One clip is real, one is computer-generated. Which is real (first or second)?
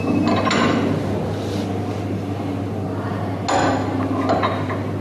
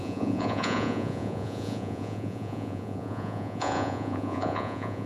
first